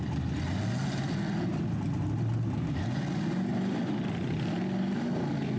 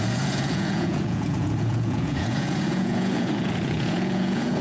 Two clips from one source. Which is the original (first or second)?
first